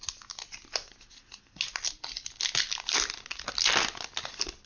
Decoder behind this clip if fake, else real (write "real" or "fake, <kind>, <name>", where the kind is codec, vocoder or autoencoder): real